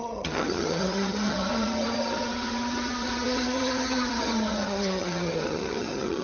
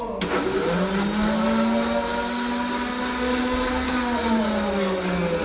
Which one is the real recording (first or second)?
second